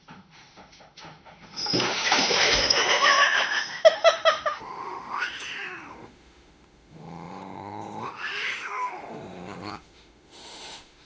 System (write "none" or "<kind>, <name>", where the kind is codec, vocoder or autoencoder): autoencoder, DAC-VAE